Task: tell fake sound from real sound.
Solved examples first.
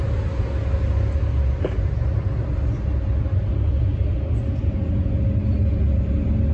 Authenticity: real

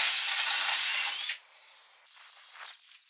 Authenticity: real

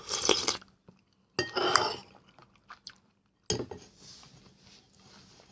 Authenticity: real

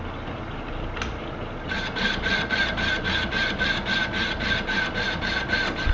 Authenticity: real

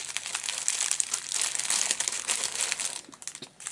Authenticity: real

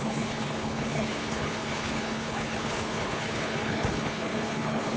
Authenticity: fake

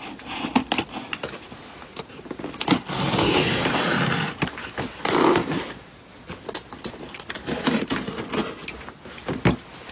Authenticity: real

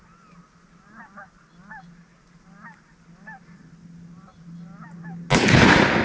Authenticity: real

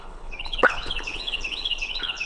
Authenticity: fake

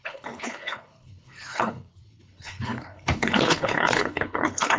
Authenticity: fake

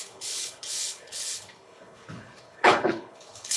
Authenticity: fake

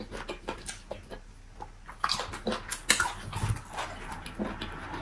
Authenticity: real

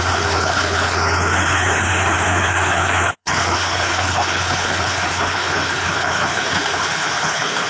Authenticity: fake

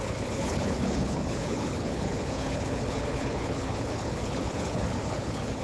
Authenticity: fake